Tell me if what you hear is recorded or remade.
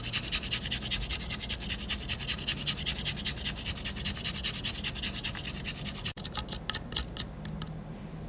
recorded